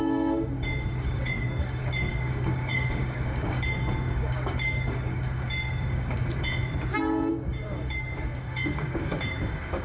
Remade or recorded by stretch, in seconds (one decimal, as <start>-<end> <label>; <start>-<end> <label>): 0.0-6.6 remade; 6.6-7.3 recorded; 7.3-9.8 remade